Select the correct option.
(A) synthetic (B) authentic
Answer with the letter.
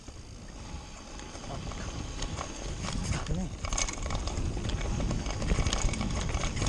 B